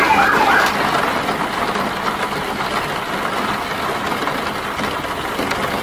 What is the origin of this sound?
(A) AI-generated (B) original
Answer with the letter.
B